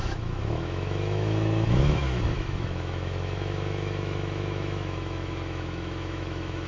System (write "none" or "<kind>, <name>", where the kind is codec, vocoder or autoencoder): autoencoder, DAC-VAE